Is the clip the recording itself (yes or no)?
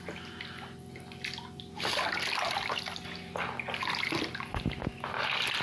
yes